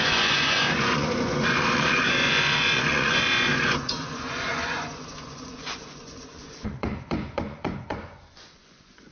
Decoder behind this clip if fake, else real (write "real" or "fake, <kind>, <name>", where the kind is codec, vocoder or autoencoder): fake, vocoder, Vocos